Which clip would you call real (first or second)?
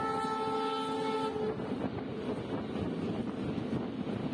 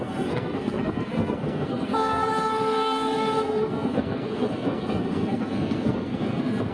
first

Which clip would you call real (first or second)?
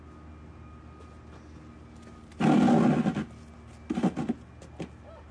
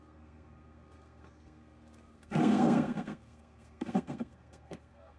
first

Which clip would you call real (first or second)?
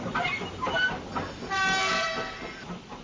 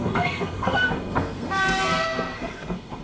first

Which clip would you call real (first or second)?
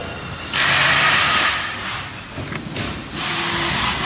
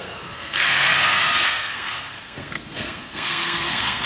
first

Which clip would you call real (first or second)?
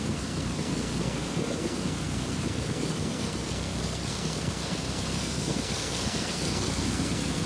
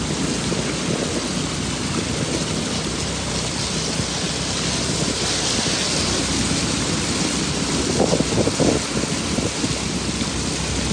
second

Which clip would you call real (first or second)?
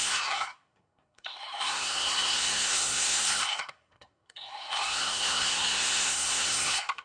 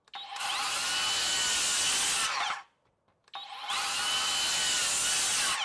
second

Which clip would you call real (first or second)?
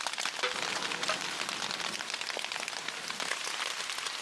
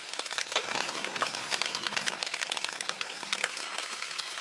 first